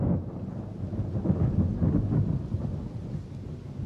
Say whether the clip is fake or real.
real